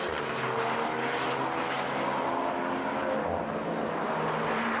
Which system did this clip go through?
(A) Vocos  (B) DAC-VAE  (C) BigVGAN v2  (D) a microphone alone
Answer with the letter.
D